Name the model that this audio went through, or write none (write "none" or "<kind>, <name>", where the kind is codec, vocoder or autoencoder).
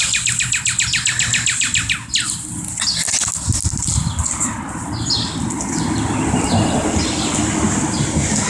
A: none